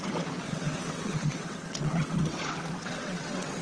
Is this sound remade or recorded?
remade